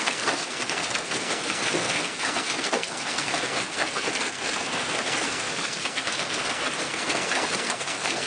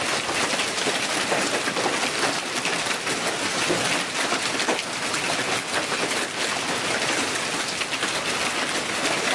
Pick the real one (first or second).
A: second